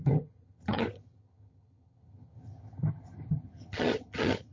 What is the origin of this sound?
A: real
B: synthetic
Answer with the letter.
B